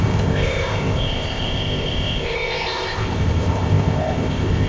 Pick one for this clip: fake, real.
fake